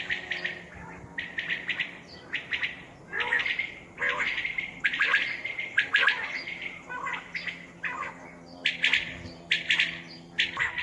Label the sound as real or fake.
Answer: real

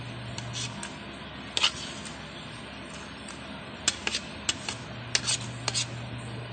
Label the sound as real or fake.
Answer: real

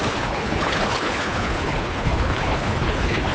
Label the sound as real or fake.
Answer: fake